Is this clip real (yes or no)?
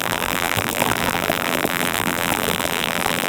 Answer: no